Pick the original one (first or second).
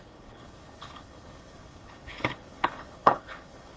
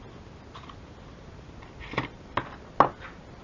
second